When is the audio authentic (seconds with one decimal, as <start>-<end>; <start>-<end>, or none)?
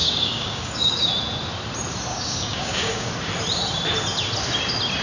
1.1-2.1; 3.1-5.0